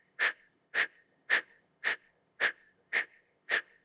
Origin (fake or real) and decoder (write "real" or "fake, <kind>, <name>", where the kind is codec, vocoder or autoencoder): fake, codec, ZipCodec